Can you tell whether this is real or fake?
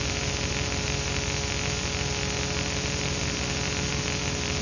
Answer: real